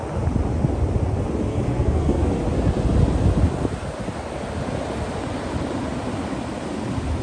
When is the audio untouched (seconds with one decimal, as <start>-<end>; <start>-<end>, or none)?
0.0-1.5; 2.3-7.2